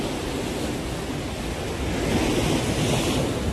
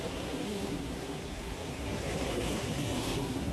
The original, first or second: first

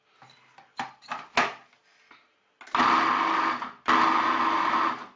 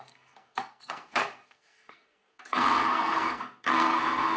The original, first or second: first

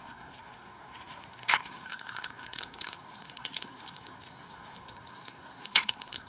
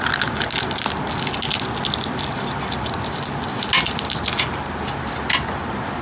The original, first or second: second